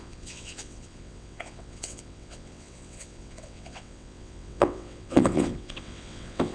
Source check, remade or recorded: remade